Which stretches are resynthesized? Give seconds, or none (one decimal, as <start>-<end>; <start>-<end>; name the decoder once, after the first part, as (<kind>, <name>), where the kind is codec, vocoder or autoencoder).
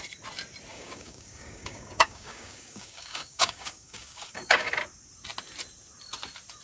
0.7-4.7 (codec, DAC)